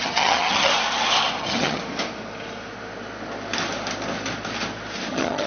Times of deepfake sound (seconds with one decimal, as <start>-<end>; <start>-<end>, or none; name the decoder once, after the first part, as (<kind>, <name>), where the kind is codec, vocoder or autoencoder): 0.0-0.7 (vocoder, HiFi-GAN); 1.4-1.8; 5.1-5.5